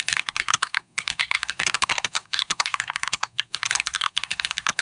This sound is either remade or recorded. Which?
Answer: remade